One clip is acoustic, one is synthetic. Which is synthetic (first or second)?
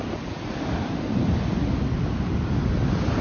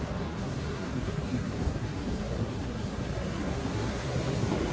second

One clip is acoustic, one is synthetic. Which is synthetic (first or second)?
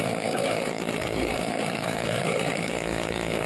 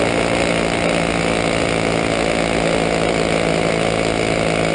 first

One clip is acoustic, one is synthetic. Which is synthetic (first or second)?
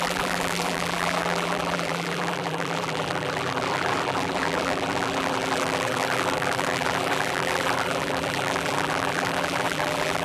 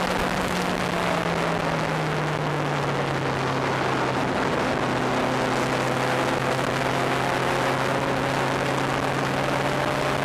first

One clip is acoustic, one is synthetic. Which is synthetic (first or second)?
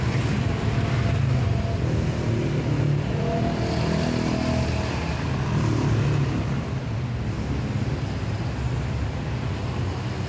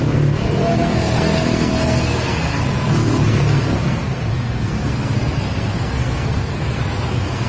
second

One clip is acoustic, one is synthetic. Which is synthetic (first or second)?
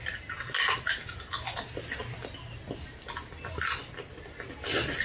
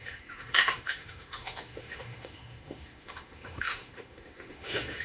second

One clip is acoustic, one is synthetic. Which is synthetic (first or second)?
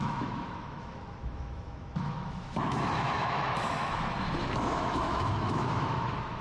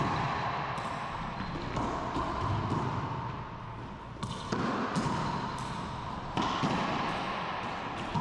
first